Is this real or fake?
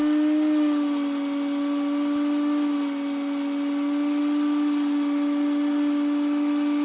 real